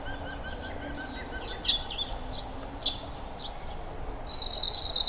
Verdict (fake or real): real